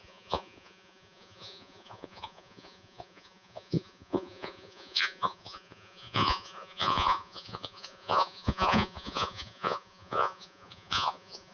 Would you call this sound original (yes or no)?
no